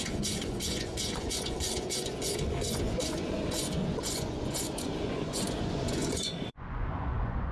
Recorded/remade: remade